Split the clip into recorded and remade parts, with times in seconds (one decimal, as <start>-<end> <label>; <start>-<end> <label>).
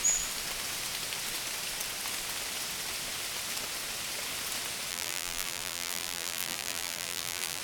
0.0-4.9 recorded; 4.9-7.6 remade